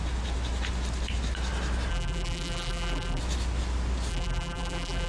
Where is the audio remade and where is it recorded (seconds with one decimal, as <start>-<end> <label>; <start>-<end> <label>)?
0.0-1.9 recorded; 1.9-3.2 remade; 3.2-4.1 recorded; 4.1-5.1 remade